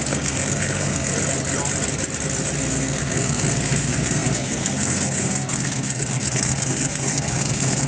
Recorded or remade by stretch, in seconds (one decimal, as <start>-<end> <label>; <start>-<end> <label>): 0.0-1.1 remade; 1.1-2.7 recorded; 2.7-7.9 remade